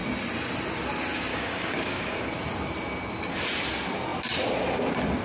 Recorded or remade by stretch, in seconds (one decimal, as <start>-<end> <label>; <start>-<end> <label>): 0.0-1.3 recorded; 1.3-2.3 remade; 2.3-5.2 recorded

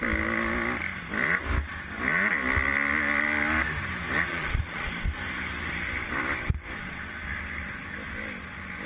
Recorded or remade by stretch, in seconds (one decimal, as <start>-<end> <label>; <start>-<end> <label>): 0.0-4.3 recorded; 4.3-4.9 remade; 4.9-8.9 recorded

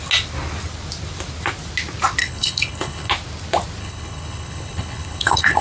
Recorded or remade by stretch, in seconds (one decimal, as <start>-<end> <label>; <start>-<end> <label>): 0.0-2.2 recorded; 2.2-3.1 remade; 3.1-3.8 recorded; 3.8-5.6 remade

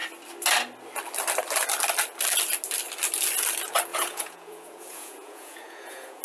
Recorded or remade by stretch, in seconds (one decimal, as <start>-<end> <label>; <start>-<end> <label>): 0.0-3.9 recorded; 3.9-6.2 remade

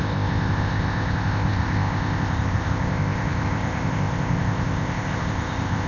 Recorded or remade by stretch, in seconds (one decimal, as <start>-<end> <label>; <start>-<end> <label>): 0.0-5.9 remade

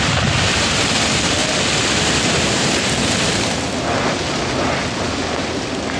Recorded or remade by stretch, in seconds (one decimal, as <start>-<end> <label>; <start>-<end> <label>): 0.0-6.0 recorded

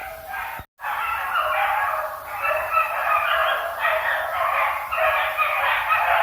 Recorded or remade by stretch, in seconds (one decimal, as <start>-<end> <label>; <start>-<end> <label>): 0.0-6.2 recorded